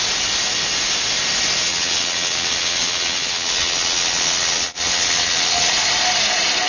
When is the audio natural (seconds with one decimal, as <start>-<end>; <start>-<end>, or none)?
0.0-1.7; 5.7-6.7